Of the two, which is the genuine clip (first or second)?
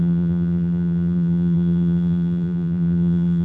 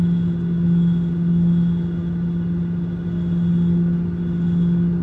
second